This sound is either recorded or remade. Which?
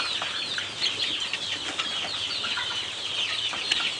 recorded